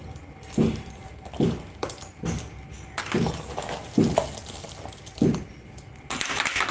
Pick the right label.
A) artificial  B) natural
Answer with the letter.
B